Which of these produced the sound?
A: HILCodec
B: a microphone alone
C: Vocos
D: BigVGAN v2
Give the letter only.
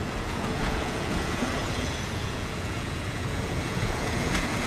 C